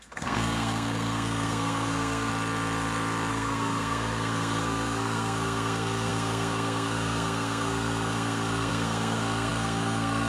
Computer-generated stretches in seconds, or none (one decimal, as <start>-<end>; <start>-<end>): 0.0-2.3; 3.3-10.3